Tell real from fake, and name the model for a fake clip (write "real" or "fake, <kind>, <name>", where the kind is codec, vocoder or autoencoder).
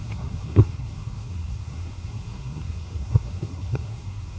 fake, codec, SNAC